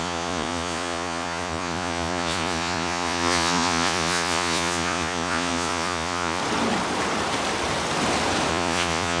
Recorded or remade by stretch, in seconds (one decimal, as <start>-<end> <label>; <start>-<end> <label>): 0.0-6.4 remade; 6.4-8.5 recorded; 8.5-9.2 remade